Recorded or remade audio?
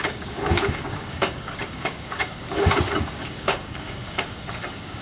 remade